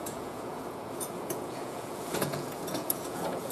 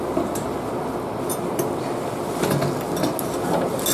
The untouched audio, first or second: second